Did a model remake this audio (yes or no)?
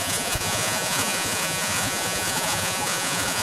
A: yes